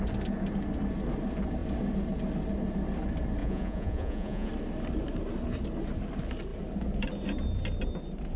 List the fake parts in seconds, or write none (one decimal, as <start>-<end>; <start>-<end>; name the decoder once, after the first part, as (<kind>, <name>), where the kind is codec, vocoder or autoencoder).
3.4-4.5 (vocoder, Vocos)